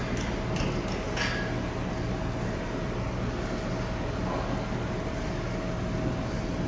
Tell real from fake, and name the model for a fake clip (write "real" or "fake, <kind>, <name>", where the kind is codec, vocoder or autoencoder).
real